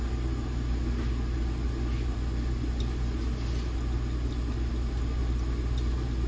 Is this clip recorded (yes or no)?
yes